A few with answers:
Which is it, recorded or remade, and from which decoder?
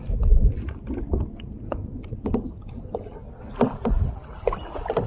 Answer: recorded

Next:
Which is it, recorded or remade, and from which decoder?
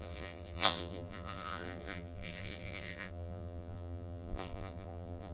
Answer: remade, vocoder, BigVGAN v2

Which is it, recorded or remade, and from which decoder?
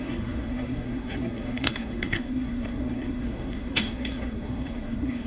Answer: remade, codec, SNAC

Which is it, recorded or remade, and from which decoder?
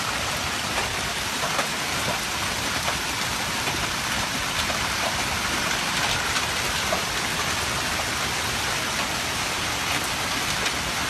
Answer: recorded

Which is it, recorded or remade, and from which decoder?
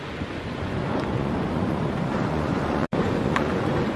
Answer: remade, vocoder, Vocos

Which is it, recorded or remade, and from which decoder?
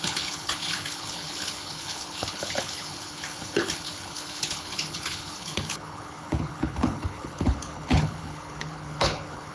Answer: remade, codec, HILCodec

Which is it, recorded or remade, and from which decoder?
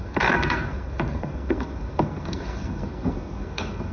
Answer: remade, codec, SNAC